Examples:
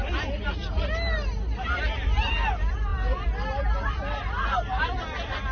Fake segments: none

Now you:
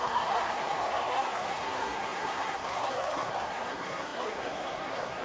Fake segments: 0.0-5.2 (codec, SNAC)

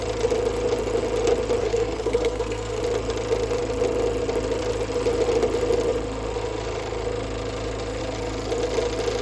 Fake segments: 1.6-2.8 (codec, SNAC)